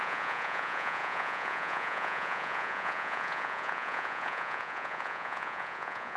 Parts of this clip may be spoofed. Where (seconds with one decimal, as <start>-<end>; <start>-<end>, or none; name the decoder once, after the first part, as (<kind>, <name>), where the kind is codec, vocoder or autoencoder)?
0.0-6.2 (vocoder, Vocos)